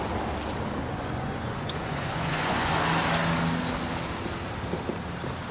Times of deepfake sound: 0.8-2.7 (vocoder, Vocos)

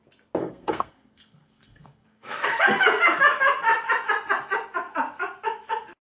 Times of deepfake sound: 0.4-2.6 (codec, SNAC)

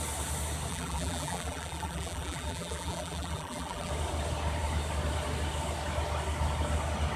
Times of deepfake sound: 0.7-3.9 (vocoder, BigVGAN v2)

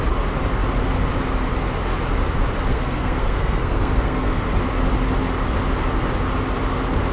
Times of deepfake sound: 2.7-4.4 (codec, SNAC)

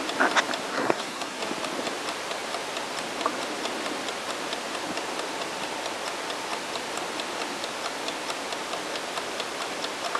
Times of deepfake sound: 0.7-1.4 (codec, SNAC)

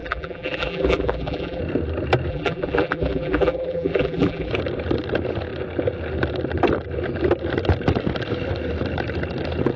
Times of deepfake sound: 0.0-1.6 (vocoder, BigVGAN v2); 2.3-4.5